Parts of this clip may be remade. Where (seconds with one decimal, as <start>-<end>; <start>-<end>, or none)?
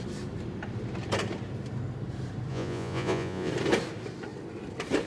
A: 2.5-3.5